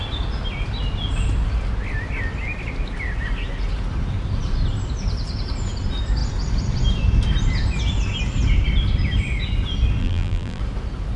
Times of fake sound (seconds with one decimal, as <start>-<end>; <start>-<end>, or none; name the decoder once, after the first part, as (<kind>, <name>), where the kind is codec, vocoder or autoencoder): 10.0-10.6 (vocoder, BigVGAN v2)